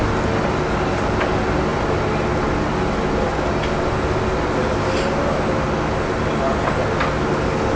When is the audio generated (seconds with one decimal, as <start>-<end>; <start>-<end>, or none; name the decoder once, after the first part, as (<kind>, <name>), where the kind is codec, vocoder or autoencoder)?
none